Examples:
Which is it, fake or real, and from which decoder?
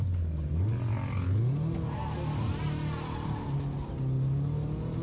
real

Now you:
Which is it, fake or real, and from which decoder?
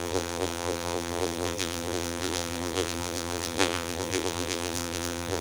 fake, vocoder, BigVGAN v2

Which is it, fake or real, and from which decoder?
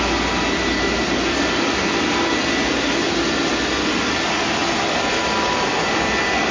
real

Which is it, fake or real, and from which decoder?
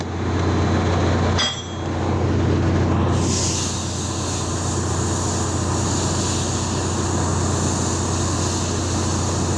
real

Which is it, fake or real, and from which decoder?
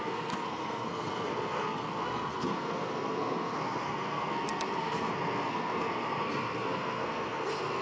fake, codec, SNAC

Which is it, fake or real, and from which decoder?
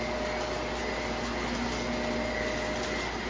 real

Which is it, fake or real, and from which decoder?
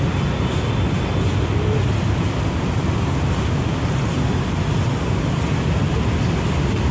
real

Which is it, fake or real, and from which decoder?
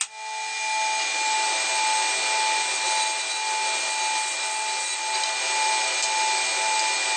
real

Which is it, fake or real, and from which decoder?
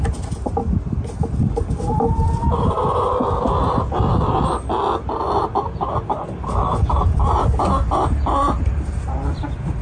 real